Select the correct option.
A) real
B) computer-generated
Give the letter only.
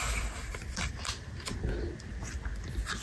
A